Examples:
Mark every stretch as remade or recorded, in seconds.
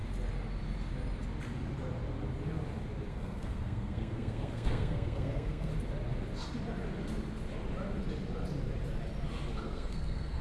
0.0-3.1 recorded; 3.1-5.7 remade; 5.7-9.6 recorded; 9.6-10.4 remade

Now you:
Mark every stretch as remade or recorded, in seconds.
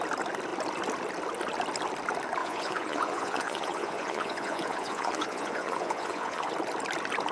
0.0-2.4 recorded; 2.4-6.5 remade; 6.5-7.3 recorded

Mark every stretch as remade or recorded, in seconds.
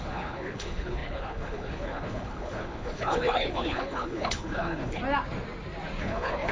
0.0-5.0 remade; 5.0-6.0 recorded; 6.0-6.5 remade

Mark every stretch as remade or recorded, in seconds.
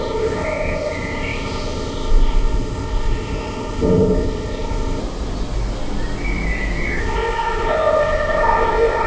0.0-5.0 remade; 5.0-7.0 recorded; 7.0-9.1 remade